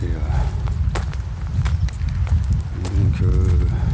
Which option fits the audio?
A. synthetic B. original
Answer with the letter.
B